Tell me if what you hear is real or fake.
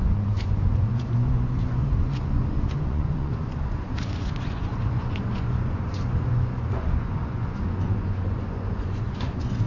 fake